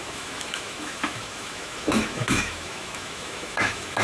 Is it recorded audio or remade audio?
remade